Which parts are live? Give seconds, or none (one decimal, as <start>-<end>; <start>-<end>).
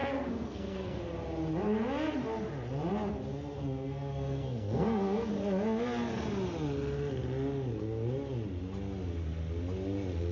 1.0-3.3; 5.3-10.3